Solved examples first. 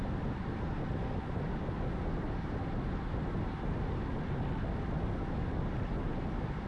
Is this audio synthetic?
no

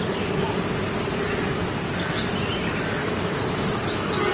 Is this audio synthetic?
no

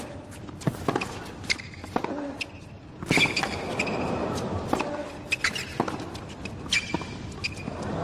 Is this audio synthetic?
no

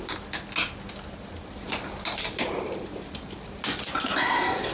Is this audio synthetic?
no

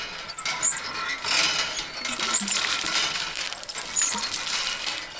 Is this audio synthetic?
no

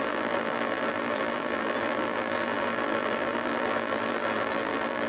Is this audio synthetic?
yes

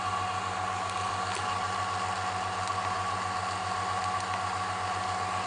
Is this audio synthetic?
no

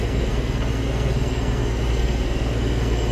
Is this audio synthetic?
yes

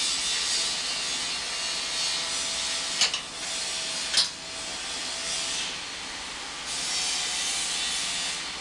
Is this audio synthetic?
no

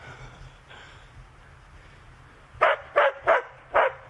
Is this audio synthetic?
no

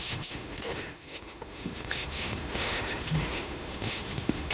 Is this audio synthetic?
yes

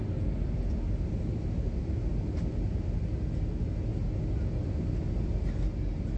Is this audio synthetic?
no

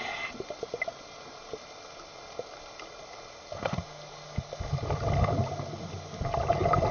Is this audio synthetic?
no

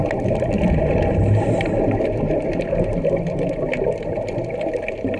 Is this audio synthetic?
no